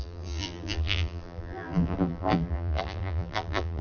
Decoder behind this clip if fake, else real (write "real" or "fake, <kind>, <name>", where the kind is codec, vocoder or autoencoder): fake, vocoder, BigVGAN v2